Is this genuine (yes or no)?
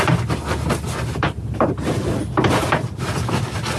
yes